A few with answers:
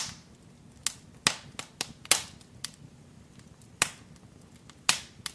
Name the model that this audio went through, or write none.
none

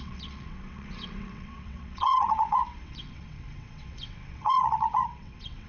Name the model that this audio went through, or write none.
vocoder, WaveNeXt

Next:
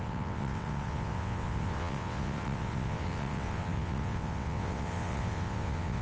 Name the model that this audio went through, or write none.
vocoder, WaveNeXt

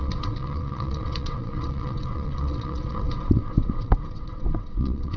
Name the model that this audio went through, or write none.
vocoder, WaveNeXt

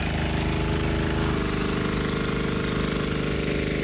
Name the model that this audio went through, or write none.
none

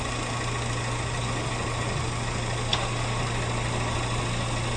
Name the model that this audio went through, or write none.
none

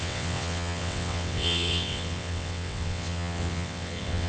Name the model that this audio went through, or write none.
vocoder, WaveNeXt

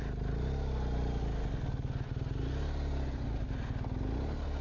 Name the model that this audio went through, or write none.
none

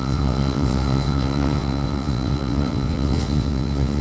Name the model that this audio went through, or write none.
vocoder, WaveNeXt